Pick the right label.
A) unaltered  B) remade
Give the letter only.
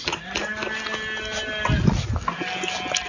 A